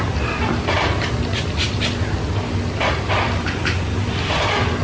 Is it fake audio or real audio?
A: real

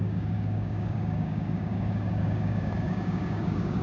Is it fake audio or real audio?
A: fake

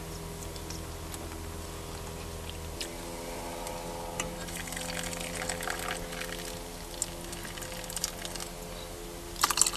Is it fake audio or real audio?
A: real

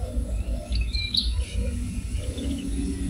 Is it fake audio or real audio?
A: fake